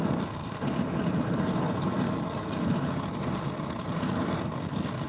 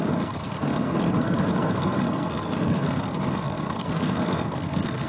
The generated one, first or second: second